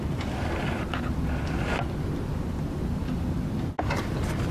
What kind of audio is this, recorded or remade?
recorded